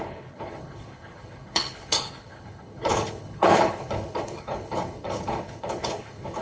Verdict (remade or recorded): remade